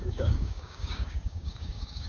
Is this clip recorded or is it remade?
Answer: remade